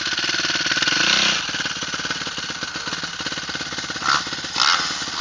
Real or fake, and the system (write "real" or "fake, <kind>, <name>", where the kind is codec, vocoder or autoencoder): real